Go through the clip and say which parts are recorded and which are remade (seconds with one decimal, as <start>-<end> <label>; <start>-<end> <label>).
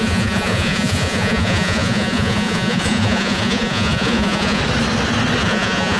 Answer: 0.0-4.6 remade; 4.6-5.4 recorded; 5.4-6.0 remade